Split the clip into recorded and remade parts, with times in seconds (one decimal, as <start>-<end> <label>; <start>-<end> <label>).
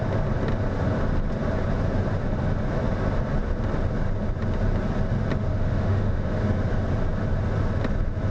0.0-5.5 recorded; 5.5-6.4 remade; 6.4-8.3 recorded